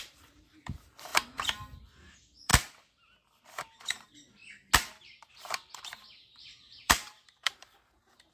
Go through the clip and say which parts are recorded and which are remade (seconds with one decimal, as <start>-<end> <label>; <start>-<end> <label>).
0.0-1.1 remade; 1.1-2.1 recorded; 2.1-2.5 remade; 2.5-3.9 recorded; 3.9-4.4 remade; 4.4-5.2 recorded; 5.2-8.3 remade

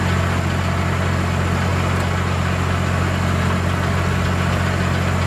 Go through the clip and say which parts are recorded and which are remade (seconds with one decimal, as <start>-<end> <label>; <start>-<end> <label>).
0.0-5.3 recorded